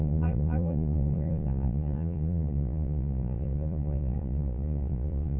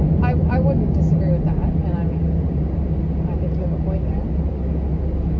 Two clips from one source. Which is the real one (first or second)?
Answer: second